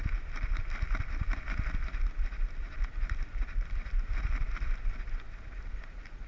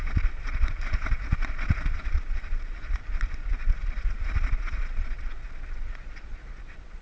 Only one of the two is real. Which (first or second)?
first